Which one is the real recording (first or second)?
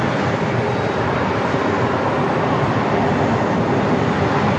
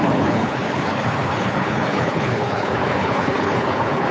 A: first